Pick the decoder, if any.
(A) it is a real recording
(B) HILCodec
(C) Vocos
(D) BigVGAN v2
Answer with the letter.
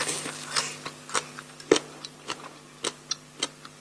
A